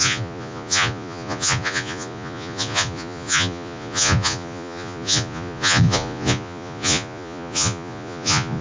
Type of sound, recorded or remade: remade